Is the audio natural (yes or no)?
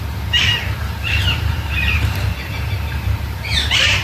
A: no